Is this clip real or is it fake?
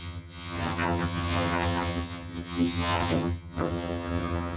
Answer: fake